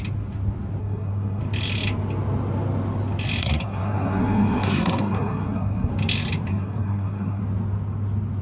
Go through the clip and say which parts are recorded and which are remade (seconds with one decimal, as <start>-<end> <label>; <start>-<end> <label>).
0.0-0.8 recorded; 0.8-1.4 remade; 1.4-3.4 recorded; 3.4-5.9 remade; 5.9-6.5 recorded; 6.5-7.4 remade; 7.4-8.4 recorded